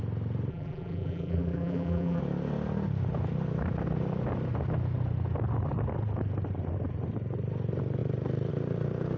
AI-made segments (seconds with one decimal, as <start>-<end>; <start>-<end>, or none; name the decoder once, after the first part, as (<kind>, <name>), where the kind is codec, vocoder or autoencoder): 0.5-2.2 (vocoder, BigVGAN v2)